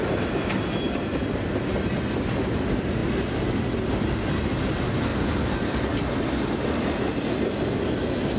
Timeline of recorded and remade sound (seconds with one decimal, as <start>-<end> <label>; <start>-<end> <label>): 0.0-8.4 recorded